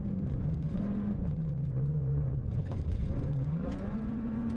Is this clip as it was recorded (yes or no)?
no